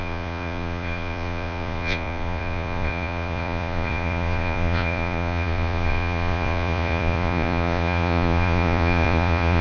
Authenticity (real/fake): fake